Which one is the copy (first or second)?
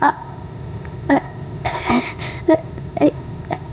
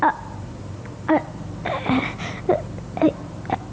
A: first